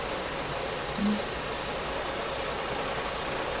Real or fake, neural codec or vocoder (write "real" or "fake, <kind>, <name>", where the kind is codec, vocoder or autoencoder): real